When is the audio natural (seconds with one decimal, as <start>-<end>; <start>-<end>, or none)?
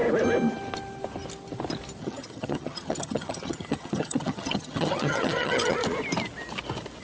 0.0-2.0; 5.8-7.0